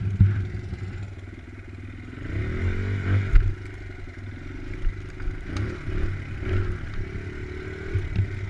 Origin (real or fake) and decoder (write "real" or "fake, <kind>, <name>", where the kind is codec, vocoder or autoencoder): real